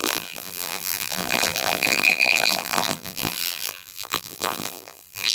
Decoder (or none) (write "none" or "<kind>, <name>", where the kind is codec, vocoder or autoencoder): vocoder, BigVGAN v2